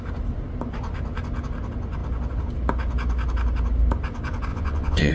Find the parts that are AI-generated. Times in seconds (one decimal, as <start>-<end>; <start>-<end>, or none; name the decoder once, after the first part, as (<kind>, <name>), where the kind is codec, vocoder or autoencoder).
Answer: 4.5-5.1 (vocoder, Vocos)